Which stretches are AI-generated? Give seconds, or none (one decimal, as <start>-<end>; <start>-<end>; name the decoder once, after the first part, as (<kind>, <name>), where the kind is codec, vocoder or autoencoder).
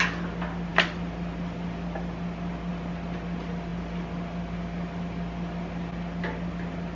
none